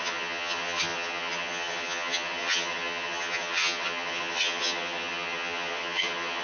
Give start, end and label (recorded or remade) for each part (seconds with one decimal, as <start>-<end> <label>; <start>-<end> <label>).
0.0-6.4 remade